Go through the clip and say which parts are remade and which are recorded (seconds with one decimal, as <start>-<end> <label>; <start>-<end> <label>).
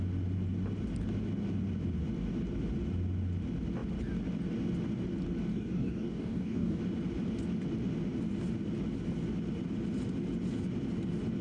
0.0-5.5 recorded; 5.5-6.8 remade; 6.8-11.4 recorded